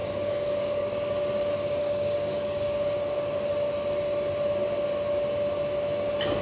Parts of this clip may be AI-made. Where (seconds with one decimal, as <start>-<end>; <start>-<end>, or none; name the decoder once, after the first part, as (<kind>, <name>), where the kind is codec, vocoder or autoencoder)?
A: 0.0-1.1 (codec, DAC); 1.8-3.3